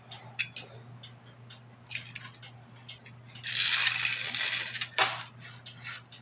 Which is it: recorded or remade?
recorded